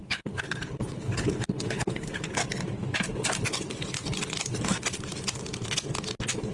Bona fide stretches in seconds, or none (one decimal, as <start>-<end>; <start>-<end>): 2.4-6.5